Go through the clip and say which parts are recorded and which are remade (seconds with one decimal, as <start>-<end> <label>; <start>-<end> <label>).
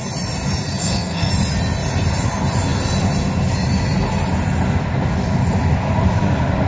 0.0-0.8 recorded; 0.8-1.3 remade; 1.3-6.7 recorded